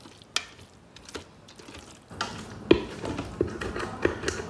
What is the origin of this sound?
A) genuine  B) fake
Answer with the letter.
A